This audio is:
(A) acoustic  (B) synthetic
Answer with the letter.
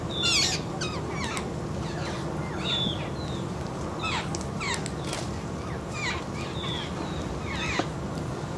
A